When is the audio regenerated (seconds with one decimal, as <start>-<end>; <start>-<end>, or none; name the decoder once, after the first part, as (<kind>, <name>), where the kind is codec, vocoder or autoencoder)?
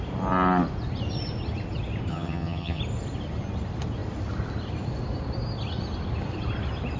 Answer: 2.1-2.8 (vocoder, HiFi-GAN)